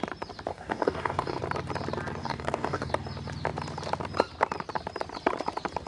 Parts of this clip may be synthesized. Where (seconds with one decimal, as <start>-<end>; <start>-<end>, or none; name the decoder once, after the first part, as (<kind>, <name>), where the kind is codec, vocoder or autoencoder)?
0.5-1.4 (codec, DAC); 2.2-2.9